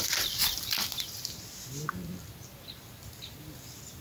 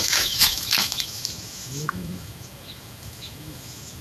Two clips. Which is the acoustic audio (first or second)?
first